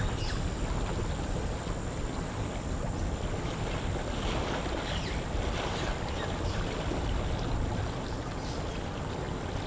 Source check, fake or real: real